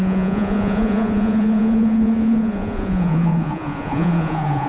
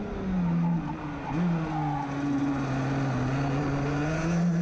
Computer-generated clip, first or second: first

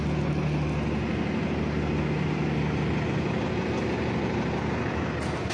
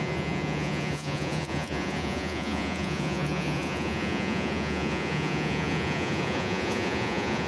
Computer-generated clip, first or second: second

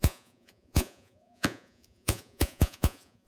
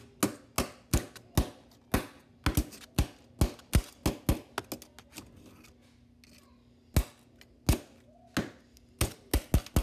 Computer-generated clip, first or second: first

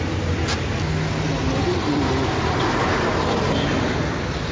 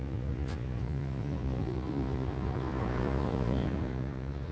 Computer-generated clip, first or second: second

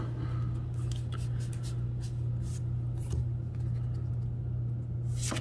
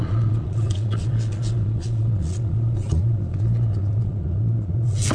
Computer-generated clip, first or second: second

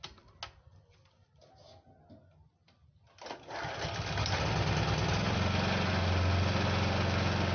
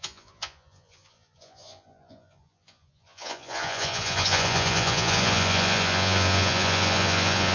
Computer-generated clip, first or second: second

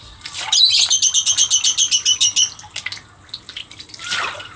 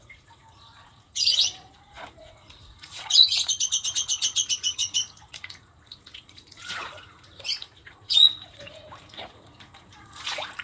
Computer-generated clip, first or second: second